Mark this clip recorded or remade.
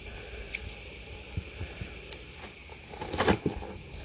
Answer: recorded